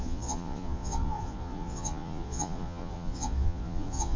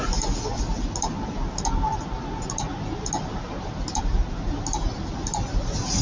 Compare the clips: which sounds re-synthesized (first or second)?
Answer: first